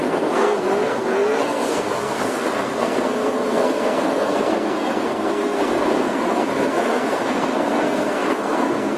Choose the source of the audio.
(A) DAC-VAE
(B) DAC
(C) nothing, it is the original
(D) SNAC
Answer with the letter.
D